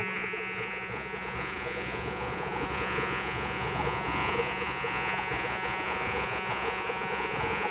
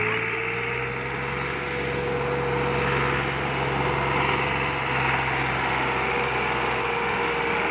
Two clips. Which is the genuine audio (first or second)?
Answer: second